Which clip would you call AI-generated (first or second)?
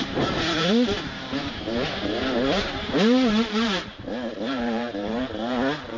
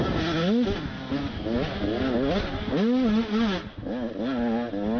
first